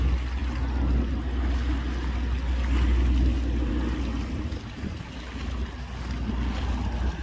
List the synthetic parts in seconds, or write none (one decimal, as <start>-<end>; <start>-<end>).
none